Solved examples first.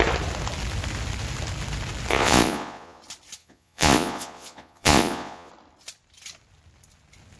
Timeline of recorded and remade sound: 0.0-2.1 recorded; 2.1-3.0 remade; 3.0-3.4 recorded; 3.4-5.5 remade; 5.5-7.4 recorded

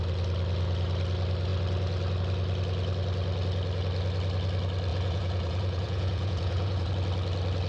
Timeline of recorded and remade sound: 0.0-4.9 recorded; 4.9-6.9 remade; 6.9-7.7 recorded

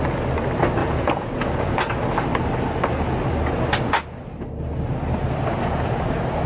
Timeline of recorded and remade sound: 0.0-0.8 recorded; 0.8-1.8 remade; 1.8-6.5 recorded

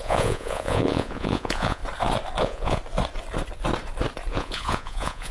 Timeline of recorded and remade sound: 0.0-1.8 remade; 1.8-2.4 recorded; 2.4-2.8 remade; 2.8-4.3 recorded; 4.3-5.3 remade